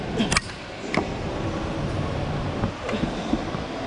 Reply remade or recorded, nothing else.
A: recorded